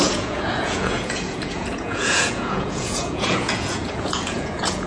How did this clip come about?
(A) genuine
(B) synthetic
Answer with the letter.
B